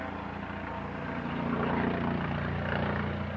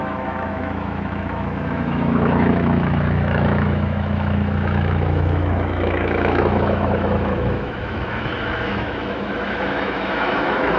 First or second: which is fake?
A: second